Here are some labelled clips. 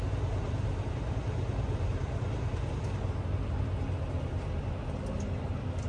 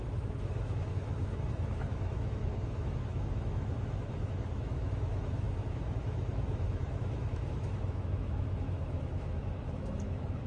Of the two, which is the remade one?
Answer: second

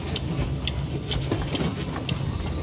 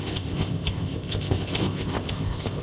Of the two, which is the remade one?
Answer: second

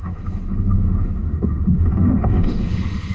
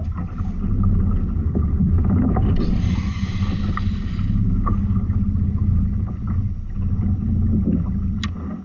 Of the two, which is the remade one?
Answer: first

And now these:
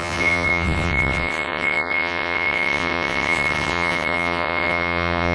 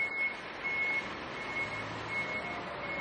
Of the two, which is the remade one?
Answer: first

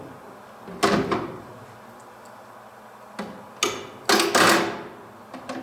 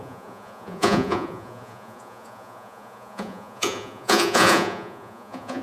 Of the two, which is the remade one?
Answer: second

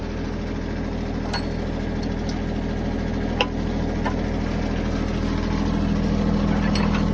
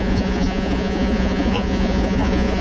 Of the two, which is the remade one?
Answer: second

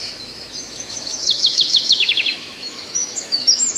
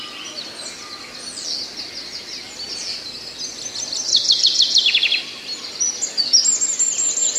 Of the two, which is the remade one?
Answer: first